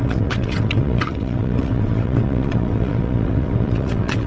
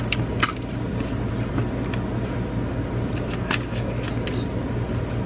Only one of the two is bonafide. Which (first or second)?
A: second